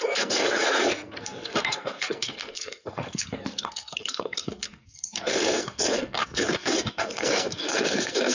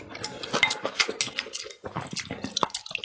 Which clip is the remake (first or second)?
first